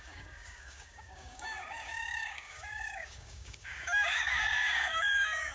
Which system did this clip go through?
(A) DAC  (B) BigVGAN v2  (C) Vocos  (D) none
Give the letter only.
A